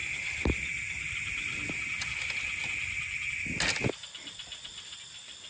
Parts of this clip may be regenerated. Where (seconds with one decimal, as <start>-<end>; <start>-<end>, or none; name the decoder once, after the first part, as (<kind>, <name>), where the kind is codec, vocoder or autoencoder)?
none